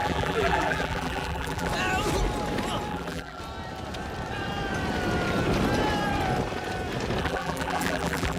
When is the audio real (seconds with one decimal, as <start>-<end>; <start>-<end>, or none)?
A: 1.7-2.9; 3.4-7.2